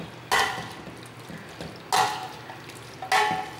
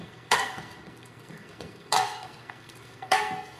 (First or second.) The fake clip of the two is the second